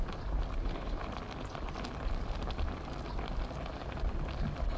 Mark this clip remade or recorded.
recorded